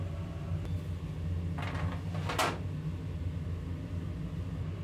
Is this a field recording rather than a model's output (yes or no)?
yes